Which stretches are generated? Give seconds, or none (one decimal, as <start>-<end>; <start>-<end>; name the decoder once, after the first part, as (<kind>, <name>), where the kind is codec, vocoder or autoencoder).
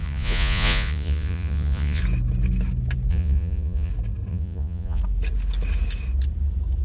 0.0-2.0 (vocoder, Vocos); 3.1-3.9; 4.3-5.0